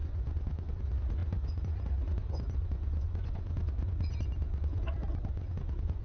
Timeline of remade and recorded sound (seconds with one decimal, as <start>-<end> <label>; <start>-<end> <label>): 0.0-0.7 remade; 0.7-1.2 recorded; 1.2-4.8 remade; 4.8-5.3 recorded; 5.3-6.0 remade